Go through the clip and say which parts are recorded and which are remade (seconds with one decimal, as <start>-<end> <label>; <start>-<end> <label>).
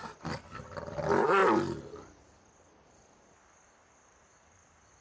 0.0-5.0 recorded